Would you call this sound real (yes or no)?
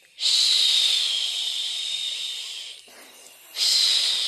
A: yes